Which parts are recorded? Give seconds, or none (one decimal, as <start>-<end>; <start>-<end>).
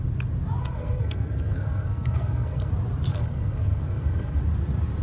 0.0-0.6; 2.7-3.1; 4.4-5.0